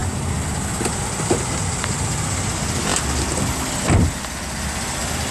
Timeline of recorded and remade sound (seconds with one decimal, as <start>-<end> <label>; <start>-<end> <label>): 0.0-5.3 recorded